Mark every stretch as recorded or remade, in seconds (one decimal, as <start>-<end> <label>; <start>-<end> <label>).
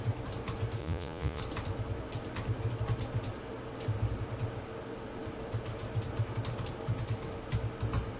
0.0-0.8 recorded; 0.8-1.4 remade; 1.4-8.2 recorded